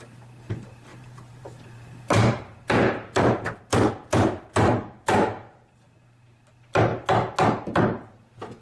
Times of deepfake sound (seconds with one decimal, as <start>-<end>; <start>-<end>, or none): 0.0-6.9